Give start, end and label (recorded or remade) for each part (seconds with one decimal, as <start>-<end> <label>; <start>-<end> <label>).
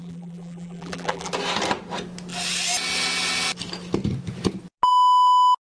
0.0-1.3 remade; 1.3-5.7 recorded